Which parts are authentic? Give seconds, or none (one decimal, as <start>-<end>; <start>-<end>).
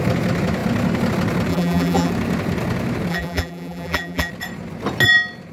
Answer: 0.0-1.5; 2.1-3.1; 4.3-5.5